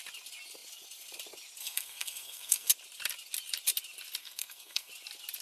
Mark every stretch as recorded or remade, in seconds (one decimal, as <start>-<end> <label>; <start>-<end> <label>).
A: 0.0-1.6 recorded; 1.6-2.7 remade; 2.7-4.2 recorded; 4.2-4.9 remade; 4.9-5.4 recorded

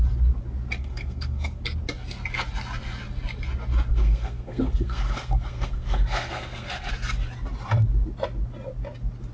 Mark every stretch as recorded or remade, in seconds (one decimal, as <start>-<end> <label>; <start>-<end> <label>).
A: 0.0-0.8 recorded; 0.8-1.6 remade; 1.6-3.9 recorded; 3.9-6.9 remade; 6.9-9.3 recorded

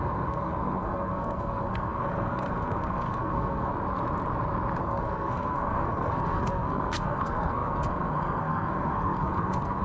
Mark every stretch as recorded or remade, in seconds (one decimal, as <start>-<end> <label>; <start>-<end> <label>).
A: 0.0-3.7 remade; 3.7-4.8 recorded; 4.8-9.8 remade

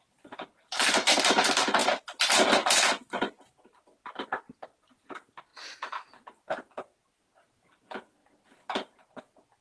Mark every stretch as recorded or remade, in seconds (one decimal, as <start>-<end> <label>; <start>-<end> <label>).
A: 0.0-9.6 recorded